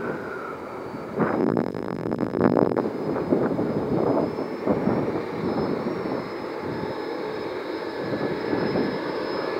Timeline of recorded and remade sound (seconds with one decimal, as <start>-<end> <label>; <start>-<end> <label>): 0.0-1.4 recorded; 1.4-2.8 remade; 2.8-9.6 recorded